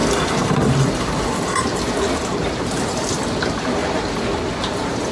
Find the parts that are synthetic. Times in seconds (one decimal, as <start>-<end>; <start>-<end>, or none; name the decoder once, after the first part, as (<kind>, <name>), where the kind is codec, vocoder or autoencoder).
2.1-3.8 (vocoder, BigVGAN v2); 4.6-5.1